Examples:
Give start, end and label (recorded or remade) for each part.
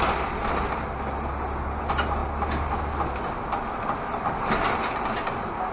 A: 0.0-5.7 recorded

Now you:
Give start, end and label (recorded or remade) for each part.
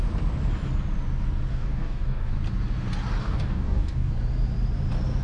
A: 0.0-1.5 recorded; 1.5-2.3 remade; 2.3-3.2 recorded; 3.2-4.1 remade; 4.1-5.2 recorded